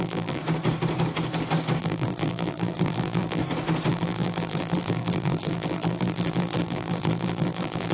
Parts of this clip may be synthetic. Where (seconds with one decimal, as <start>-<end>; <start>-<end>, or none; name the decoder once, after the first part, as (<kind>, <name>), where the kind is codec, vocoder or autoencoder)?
0.0-0.4 (vocoder, BigVGAN v2); 1.8-3.4; 3.9-7.9